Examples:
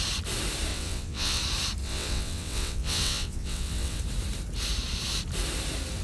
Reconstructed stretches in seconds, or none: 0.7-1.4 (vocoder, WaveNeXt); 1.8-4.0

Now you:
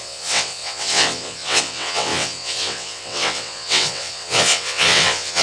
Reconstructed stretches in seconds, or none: 0.0-5.4 (vocoder, WaveNeXt)

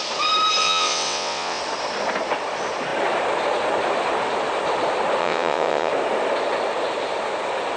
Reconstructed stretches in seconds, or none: 0.6-1.6 (vocoder, WaveNeXt); 5.2-5.9

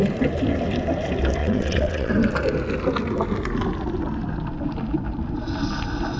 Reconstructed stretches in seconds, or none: 1.4-2.1 (vocoder, WaveNeXt)

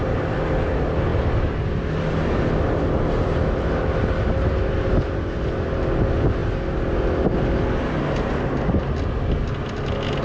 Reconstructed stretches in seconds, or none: none

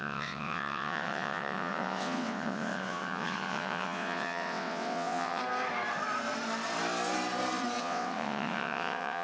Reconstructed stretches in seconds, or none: 0.0-5.4 (vocoder, WaveNeXt); 7.8-9.2